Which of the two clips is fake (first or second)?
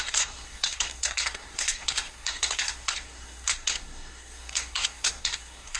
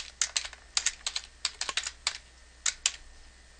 first